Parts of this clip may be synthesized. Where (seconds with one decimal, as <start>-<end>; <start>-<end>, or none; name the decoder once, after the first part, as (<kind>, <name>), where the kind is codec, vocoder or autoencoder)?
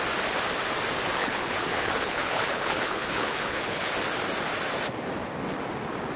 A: 1.2-3.9 (codec, HILCodec)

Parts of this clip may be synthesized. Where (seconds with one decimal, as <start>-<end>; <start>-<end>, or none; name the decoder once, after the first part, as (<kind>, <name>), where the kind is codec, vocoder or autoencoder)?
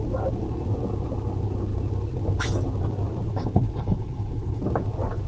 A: 3.3-4.6 (codec, HILCodec)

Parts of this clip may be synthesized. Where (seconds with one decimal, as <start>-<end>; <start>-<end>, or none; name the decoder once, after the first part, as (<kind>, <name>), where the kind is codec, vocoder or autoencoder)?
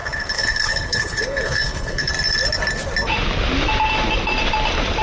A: 0.0-2.1 (codec, HILCodec)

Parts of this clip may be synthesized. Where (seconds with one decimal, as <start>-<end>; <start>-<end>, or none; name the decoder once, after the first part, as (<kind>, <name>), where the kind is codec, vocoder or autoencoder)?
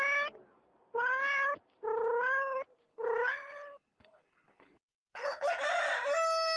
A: 2.9-5.5 (codec, HILCodec)